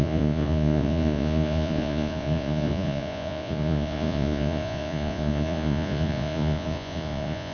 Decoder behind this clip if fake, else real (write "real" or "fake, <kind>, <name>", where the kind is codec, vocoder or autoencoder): fake, vocoder, Vocos